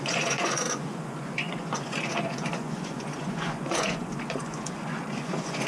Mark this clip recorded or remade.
remade